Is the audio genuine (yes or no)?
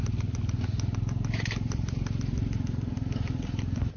yes